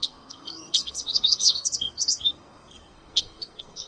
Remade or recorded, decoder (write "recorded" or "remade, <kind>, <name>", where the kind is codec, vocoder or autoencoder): remade, codec, SNAC